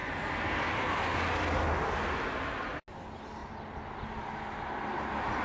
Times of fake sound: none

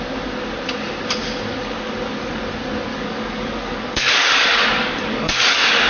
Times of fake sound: 1.5-2.4 (codec, DAC); 2.9-5.9

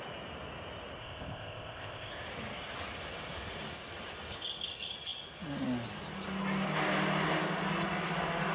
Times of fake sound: 1.0-2.1 (codec, ZipCodec)

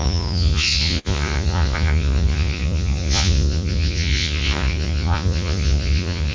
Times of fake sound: 0.0-6.3 (vocoder, Vocos)